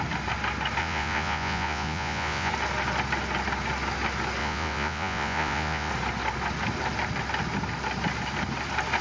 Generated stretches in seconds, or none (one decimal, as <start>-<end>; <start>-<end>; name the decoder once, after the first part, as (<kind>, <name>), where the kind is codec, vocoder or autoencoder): 0.8-2.5 (vocoder, Vocos); 4.4-5.9